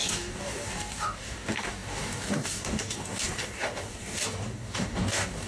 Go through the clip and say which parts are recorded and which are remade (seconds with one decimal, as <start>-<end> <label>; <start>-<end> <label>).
0.0-5.5 remade